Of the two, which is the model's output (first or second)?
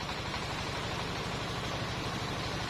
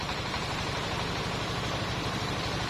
second